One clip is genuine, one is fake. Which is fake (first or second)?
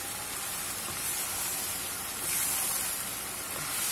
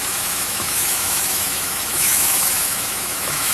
second